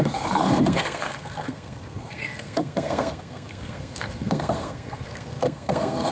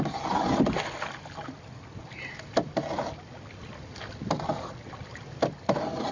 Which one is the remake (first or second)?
first